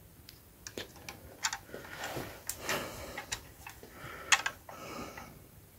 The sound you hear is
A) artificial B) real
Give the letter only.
B